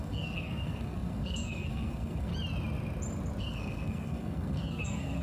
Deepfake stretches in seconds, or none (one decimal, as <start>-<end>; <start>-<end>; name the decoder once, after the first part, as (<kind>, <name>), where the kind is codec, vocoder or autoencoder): 0.0-2.3 (codec, SNAC); 3.4-5.2